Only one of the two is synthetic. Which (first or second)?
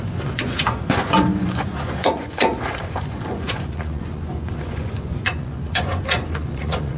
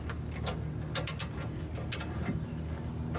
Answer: first